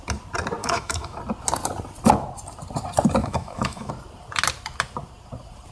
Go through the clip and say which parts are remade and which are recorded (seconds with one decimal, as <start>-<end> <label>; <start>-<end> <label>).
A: 0.0-0.6 recorded; 0.6-1.2 remade; 1.2-3.2 recorded; 3.2-3.9 remade; 3.9-5.7 recorded